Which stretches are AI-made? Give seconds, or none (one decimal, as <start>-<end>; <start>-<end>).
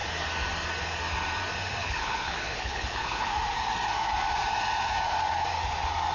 1.8-3.3